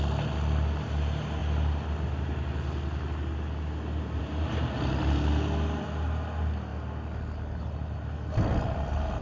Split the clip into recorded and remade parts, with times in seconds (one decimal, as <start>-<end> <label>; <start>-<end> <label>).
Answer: 0.0-9.2 recorded